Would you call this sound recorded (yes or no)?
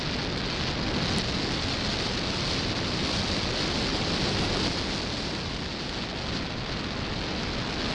yes